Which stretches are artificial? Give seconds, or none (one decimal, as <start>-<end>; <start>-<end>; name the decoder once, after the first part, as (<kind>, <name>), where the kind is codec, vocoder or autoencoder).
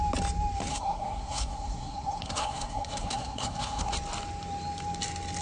0.7-3.9 (codec, SNAC)